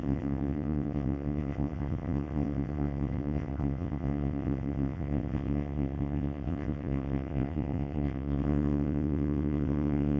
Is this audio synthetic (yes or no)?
yes